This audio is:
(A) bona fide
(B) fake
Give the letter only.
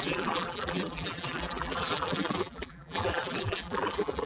B